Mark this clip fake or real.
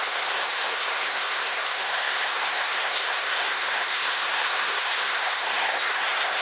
fake